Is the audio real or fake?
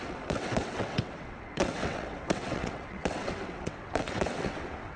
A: fake